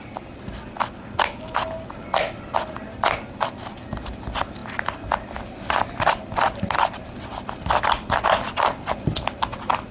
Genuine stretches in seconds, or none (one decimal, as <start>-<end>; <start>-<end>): 0.0-9.9